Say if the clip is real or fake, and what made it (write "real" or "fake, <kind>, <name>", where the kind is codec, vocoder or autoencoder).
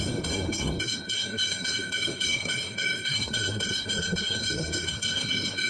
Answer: fake, codec, SNAC